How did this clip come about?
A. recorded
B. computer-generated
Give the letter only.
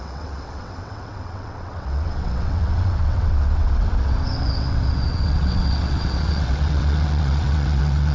B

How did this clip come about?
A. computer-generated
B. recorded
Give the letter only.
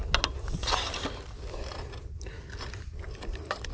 B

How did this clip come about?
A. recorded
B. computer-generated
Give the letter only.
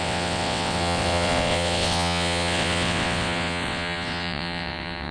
B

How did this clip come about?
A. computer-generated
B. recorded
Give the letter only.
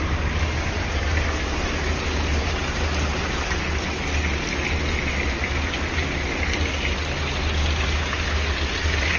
B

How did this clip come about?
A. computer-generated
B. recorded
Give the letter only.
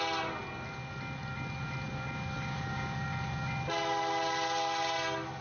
B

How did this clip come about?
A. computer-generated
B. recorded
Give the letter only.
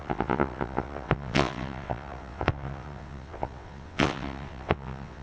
A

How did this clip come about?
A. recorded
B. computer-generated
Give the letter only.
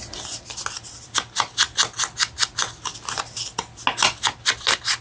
A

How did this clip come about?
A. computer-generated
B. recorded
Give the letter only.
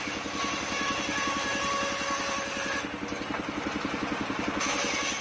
B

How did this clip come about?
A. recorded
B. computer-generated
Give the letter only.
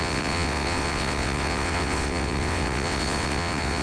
B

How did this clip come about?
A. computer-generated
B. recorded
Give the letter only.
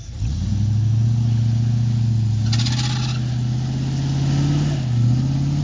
B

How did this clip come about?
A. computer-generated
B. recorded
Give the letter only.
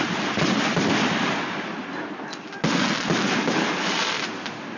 B